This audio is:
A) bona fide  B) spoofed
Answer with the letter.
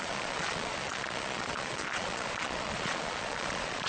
B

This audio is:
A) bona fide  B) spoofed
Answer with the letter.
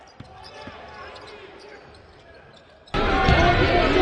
A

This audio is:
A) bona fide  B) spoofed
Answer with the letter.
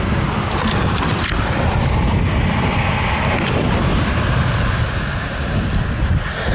A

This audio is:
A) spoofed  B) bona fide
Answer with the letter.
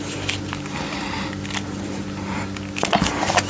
B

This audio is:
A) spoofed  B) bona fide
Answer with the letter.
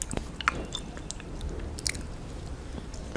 B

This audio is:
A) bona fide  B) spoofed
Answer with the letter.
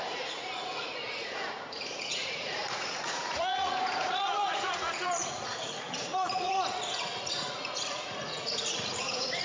B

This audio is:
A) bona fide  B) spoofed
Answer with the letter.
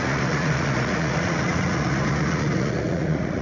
B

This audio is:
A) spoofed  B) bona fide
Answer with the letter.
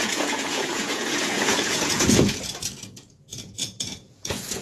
A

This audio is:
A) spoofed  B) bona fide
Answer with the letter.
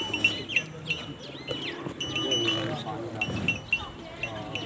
B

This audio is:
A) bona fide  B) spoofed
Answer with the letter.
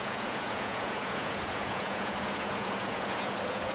B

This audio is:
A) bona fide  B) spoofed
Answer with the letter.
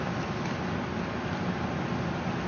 A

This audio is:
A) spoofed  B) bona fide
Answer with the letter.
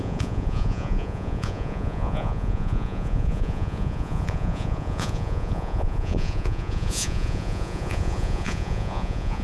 A